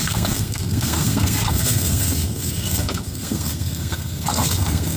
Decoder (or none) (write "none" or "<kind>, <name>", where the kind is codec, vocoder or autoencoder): codec, SNAC